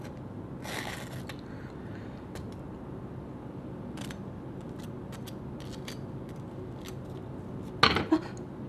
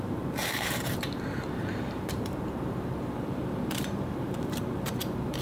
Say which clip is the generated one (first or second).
second